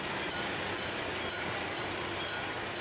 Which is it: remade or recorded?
recorded